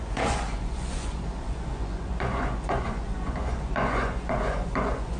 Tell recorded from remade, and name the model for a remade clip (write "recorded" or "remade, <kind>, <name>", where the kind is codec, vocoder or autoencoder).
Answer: remade, vocoder, Vocos